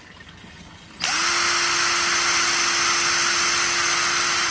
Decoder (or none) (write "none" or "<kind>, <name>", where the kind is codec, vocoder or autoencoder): none